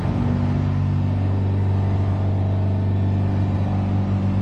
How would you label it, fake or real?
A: real